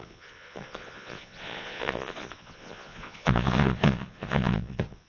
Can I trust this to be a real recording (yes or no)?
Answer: no